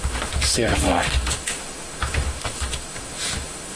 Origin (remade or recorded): remade